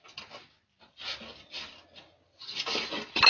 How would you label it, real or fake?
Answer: real